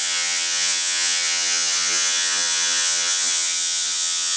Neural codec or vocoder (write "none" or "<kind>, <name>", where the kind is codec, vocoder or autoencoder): vocoder, HiFi-GAN